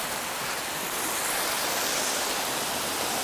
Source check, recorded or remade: recorded